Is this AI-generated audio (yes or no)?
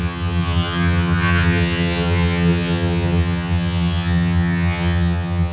yes